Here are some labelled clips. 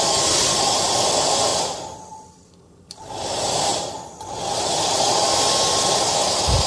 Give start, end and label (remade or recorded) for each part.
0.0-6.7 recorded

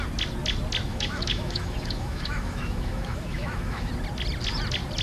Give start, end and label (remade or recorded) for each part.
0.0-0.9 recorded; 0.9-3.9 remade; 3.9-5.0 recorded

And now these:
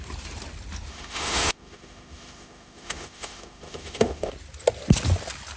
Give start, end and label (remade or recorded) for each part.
0.0-0.9 recorded; 0.9-4.3 remade; 4.3-5.6 recorded